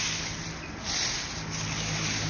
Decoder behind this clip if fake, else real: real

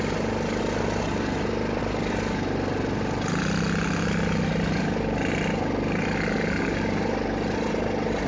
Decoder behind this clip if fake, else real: real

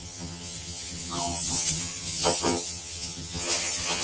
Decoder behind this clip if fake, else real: fake, vocoder, HiFi-GAN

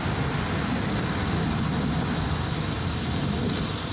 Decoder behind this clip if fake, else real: real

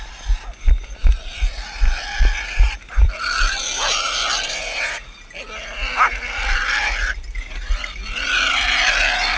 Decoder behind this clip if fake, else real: real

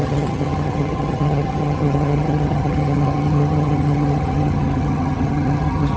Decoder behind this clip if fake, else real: fake, vocoder, HiFi-GAN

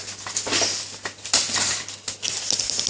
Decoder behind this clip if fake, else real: real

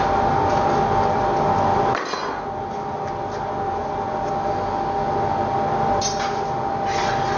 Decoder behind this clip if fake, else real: real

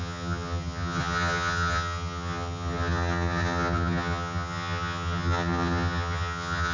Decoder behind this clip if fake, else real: fake, vocoder, HiFi-GAN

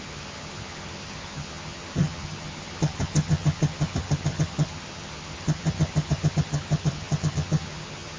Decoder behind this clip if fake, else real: fake, vocoder, HiFi-GAN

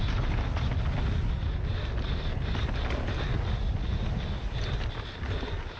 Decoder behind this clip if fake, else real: real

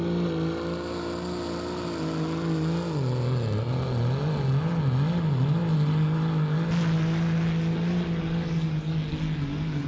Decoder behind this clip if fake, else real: real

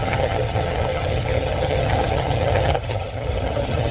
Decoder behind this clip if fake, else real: fake, vocoder, HiFi-GAN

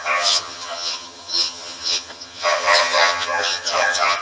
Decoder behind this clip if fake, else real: fake, vocoder, HiFi-GAN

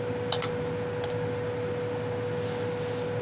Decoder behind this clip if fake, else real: real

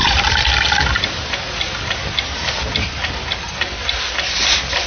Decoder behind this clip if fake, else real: real